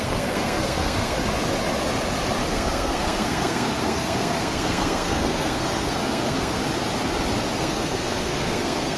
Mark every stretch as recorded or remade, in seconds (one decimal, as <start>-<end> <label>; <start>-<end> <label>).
0.0-1.2 remade; 1.2-2.5 recorded; 2.5-6.6 remade; 6.6-7.6 recorded; 7.6-9.0 remade